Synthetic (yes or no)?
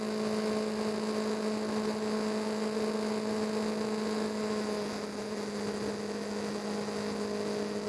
no